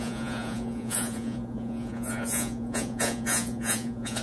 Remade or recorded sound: remade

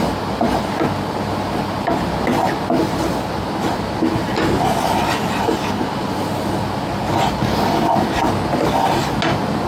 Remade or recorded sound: recorded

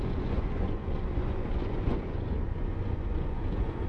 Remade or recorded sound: remade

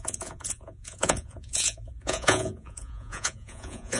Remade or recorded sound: remade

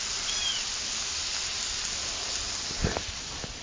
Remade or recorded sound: recorded